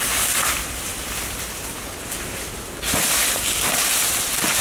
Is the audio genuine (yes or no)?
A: yes